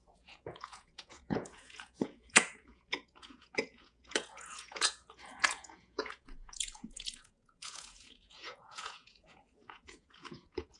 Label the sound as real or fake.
fake